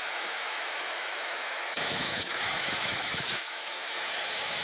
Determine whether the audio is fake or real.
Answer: fake